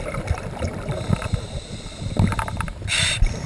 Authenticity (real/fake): fake